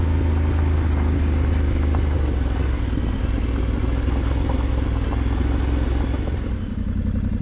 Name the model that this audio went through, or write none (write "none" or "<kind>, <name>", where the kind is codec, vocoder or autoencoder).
none